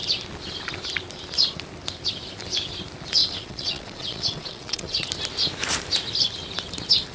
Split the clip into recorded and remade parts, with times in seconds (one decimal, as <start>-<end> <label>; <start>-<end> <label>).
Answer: 0.0-3.2 recorded; 3.2-5.1 remade; 5.1-7.1 recorded